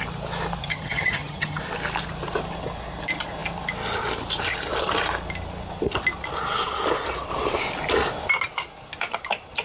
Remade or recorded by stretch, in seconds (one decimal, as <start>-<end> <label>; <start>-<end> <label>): 0.0-0.7 recorded; 0.7-1.6 remade; 1.6-9.6 recorded